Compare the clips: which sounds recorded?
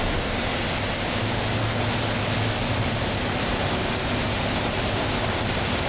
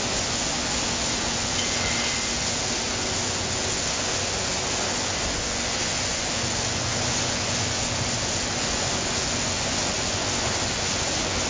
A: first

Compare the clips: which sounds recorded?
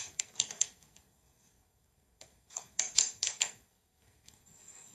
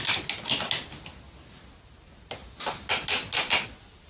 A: second